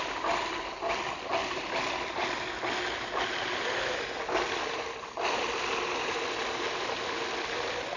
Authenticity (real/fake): real